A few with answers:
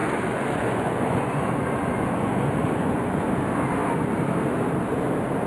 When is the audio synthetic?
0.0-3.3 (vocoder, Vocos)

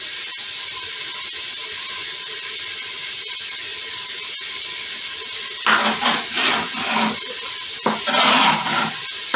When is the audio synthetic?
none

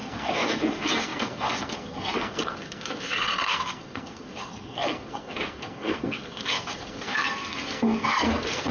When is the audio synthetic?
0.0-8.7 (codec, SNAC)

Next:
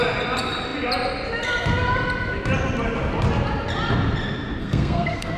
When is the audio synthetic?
4.6-5.4 (codec, SNAC)

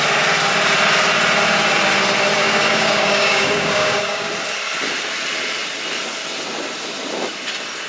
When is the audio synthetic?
2.3-4.3 (codec, DAC)

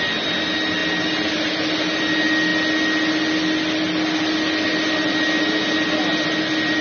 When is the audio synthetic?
none

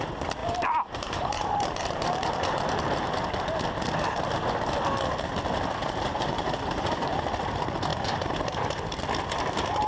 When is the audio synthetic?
0.4-3.4 (vocoder, BigVGAN v2); 5.8-7.1; 7.9-8.6